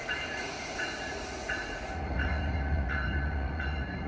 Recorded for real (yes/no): no